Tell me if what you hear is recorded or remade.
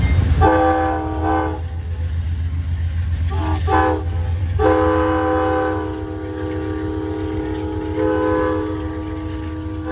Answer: recorded